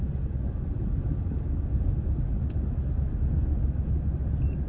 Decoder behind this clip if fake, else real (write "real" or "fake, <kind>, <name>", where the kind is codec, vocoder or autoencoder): real